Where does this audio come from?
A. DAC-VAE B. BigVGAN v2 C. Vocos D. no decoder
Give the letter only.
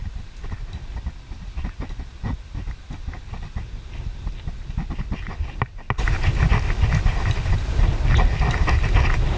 D